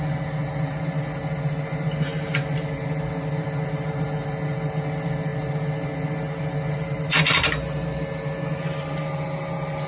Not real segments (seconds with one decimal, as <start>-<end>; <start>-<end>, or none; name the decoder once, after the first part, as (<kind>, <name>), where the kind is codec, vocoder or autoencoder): none

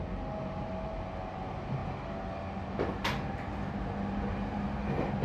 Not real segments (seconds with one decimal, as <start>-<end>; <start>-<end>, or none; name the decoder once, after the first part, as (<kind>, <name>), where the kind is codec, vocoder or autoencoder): none

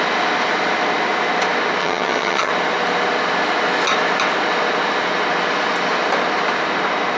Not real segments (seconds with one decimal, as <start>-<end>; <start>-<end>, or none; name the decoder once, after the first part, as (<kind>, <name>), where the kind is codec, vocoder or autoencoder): 1.8-2.5 (vocoder, HiFi-GAN)

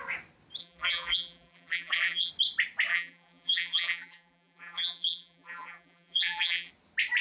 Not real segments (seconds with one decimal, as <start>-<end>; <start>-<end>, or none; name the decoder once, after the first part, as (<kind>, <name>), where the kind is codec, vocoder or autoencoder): 0.6-2.3 (vocoder, BigVGAN v2); 2.9-6.7

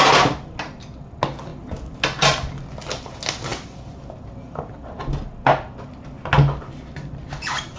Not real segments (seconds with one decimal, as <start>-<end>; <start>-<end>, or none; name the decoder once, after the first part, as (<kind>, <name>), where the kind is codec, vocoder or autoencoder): 3.5-5.0 (vocoder, BigVGAN v2)

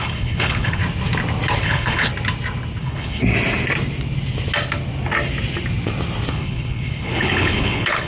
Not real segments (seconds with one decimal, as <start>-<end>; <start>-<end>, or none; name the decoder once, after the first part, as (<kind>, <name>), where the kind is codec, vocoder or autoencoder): 0.0-0.8 (codec, HILCodec); 1.6-2.1; 2.8-3.2; 6.3-8.1

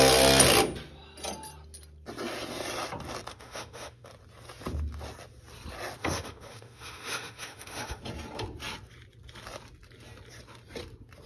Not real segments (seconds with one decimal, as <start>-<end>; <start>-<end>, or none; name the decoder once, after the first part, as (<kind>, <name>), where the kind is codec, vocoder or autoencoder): 3.3-4.1 (autoencoder, DAC-VAE); 6.0-8.0